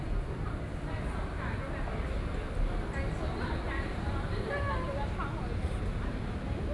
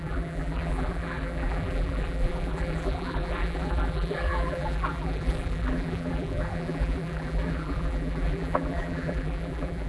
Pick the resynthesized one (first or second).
second